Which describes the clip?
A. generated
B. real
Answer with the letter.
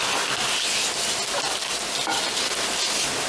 B